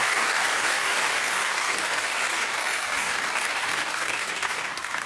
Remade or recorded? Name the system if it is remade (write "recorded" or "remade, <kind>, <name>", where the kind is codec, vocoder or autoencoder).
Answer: remade, codec, DAC